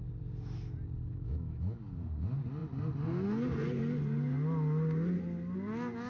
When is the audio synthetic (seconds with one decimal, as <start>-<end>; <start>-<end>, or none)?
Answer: 1.1-1.8